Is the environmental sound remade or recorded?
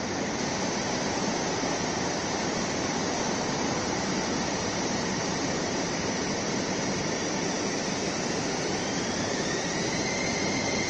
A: remade